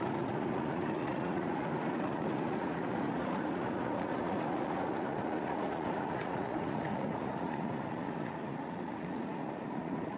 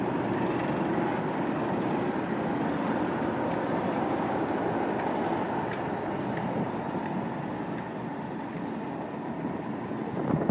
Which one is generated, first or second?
first